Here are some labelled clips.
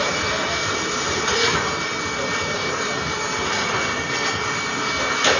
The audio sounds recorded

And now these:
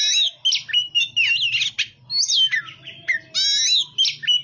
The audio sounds recorded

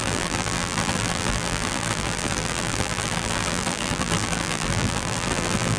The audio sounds remade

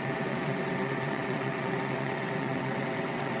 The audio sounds remade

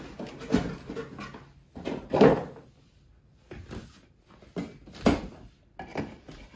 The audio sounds recorded